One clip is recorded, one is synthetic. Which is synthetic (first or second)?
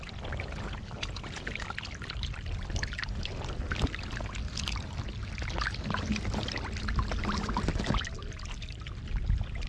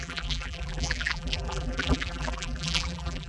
second